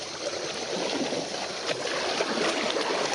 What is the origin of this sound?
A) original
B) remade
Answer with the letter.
A